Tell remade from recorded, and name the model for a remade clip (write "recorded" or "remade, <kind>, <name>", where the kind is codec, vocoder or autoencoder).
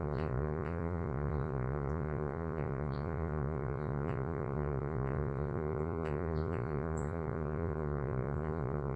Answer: remade, vocoder, Vocos